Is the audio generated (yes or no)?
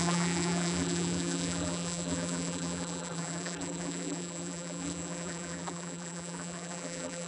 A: yes